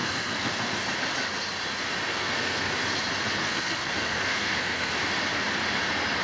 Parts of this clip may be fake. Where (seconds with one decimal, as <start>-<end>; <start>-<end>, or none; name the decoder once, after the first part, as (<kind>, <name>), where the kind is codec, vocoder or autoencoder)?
0.0-0.7 (codec, SNAC); 2.1-2.7; 3.4-4.9